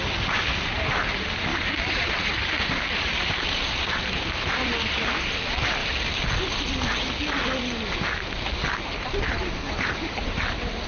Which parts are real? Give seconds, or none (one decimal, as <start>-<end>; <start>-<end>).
5.8-8.8